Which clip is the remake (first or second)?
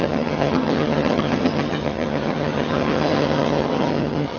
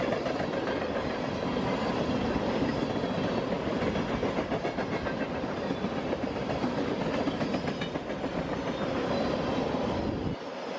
first